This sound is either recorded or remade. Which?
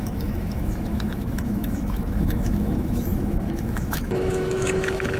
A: remade